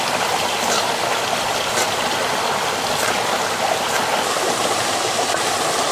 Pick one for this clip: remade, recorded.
recorded